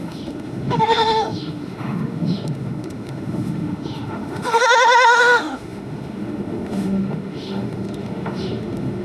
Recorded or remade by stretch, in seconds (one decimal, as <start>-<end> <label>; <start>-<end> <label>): 0.0-9.0 remade